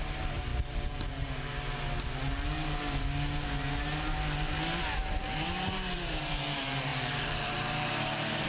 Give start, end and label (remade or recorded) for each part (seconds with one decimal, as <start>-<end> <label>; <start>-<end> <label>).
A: 0.0-0.5 remade; 0.5-4.8 recorded; 4.8-8.5 remade